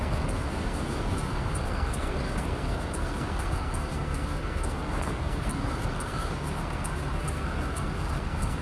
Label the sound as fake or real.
fake